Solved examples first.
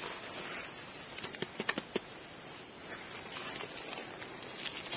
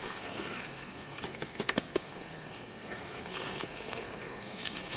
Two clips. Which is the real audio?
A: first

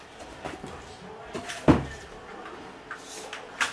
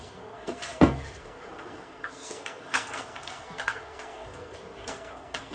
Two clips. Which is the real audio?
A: first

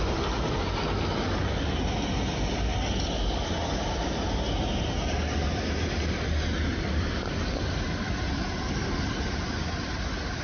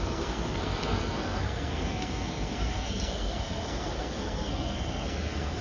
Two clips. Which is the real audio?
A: first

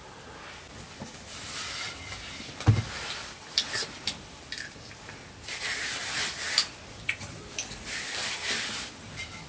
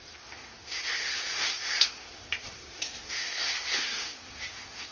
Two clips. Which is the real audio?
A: first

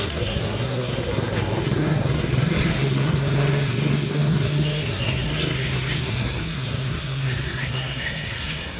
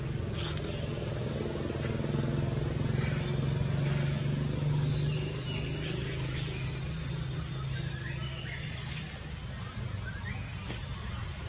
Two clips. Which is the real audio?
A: second